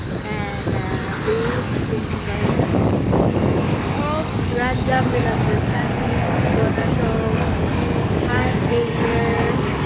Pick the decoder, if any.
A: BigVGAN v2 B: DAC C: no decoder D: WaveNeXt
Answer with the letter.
B